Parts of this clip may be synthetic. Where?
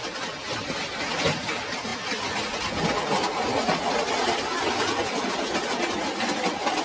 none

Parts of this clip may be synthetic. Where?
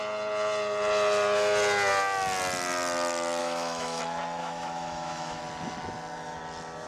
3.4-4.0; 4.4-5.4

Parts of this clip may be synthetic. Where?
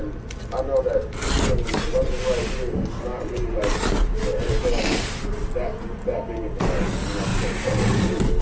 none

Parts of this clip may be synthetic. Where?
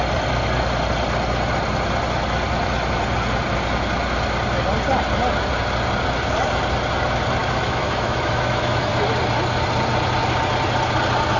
7.4-8.9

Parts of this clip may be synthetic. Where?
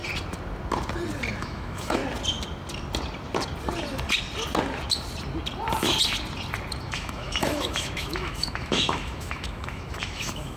1.4-2.0; 6.8-10.6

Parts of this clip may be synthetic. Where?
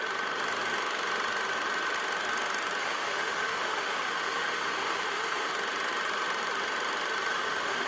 2.8-5.5; 7.3-7.9